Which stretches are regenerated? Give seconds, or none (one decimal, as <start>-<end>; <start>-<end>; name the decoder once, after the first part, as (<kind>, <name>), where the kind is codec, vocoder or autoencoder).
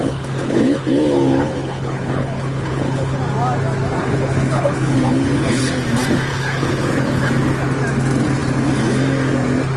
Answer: 0.0-3.2 (codec, HILCodec); 4.0-5.6; 6.3-7.3